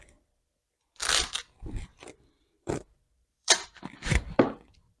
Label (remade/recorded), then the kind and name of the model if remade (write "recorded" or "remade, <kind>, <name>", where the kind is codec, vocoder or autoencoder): remade, vocoder, BigVGAN v2